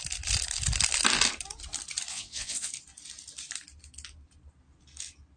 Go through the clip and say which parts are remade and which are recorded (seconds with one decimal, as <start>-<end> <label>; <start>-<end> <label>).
0.0-2.1 recorded; 2.1-2.7 remade; 2.7-5.4 recorded